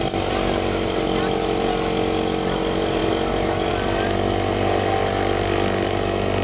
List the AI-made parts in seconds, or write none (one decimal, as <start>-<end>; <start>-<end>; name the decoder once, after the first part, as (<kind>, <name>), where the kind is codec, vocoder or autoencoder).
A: none